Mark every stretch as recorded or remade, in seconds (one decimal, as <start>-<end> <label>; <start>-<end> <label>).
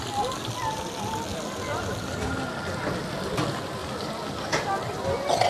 0.0-5.5 recorded